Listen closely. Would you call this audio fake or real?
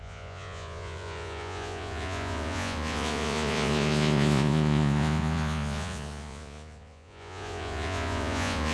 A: fake